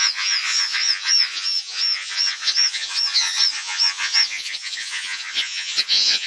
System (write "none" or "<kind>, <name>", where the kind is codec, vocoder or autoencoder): vocoder, Vocos